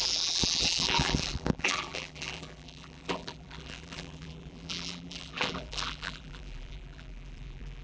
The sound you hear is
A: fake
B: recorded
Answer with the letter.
A